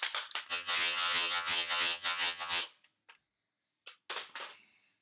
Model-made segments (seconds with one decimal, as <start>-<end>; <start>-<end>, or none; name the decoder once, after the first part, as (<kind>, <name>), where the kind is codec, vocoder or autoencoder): 0.5-2.6 (vocoder, HiFi-GAN)